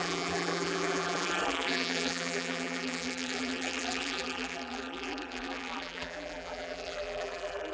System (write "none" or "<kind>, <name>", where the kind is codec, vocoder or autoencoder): vocoder, BigVGAN v2